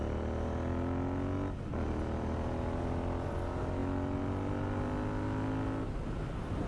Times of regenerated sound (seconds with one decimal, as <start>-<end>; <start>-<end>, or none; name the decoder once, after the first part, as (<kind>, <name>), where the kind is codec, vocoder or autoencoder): none